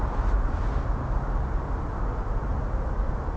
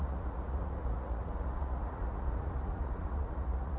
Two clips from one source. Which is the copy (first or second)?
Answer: second